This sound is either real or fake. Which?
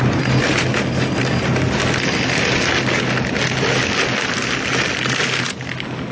real